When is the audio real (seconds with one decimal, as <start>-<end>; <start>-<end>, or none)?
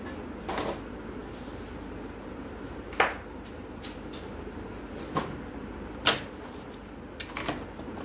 0.0-8.0